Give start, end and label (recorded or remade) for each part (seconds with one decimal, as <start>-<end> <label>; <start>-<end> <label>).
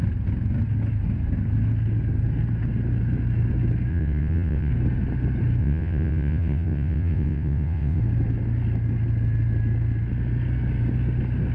0.0-3.9 recorded; 3.9-4.7 remade; 4.7-5.6 recorded; 5.6-8.0 remade; 8.0-11.5 recorded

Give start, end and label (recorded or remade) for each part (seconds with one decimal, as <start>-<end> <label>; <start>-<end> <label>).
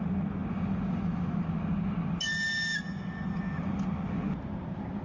0.0-5.0 recorded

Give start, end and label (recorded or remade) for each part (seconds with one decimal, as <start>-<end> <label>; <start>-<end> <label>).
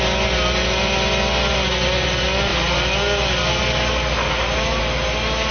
0.0-5.5 recorded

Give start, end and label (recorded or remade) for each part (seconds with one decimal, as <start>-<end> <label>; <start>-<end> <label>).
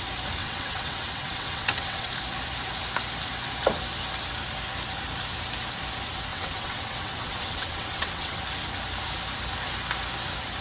0.0-0.4 recorded; 0.4-2.1 remade; 2.1-6.3 recorded; 6.3-8.4 remade; 8.4-10.6 recorded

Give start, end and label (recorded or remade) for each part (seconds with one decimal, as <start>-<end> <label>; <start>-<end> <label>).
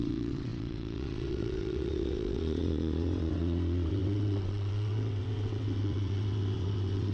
0.0-7.1 remade